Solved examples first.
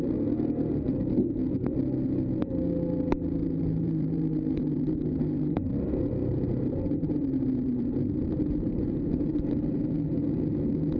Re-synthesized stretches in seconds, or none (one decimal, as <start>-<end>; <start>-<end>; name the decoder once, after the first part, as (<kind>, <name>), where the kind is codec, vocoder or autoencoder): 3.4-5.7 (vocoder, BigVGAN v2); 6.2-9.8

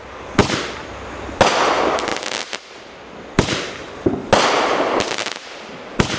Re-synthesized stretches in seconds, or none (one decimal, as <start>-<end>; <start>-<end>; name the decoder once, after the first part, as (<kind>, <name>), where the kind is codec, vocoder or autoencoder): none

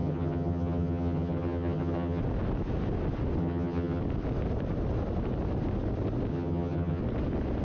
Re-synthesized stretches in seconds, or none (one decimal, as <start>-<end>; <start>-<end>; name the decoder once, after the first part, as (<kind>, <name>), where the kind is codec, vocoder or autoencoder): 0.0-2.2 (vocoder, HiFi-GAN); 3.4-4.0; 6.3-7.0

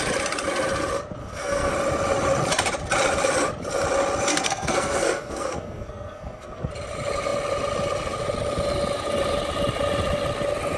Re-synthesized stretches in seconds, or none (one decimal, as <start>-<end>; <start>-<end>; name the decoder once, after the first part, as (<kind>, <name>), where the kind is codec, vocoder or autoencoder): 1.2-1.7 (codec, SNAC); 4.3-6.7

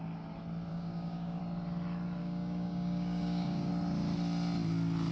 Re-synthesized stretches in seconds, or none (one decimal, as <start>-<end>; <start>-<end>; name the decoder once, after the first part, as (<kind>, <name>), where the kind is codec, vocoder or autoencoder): 0.7-1.4 (codec, DAC); 2.2-3.7

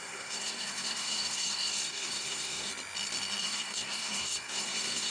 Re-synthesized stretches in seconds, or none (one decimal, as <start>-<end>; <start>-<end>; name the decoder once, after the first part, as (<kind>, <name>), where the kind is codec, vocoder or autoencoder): 0.0-2.7 (codec, SNAC); 3.4-5.1

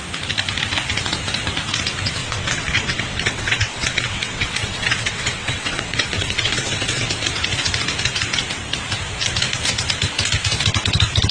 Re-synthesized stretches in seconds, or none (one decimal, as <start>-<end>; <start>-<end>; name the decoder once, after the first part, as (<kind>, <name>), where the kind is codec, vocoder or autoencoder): 2.2-7.1 (vocoder, WaveNeXt)